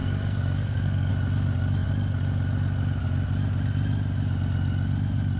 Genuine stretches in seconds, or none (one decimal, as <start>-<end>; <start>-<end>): 1.1-5.4